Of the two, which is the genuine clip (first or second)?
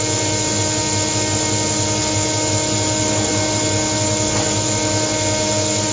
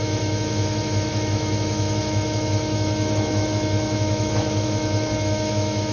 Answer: first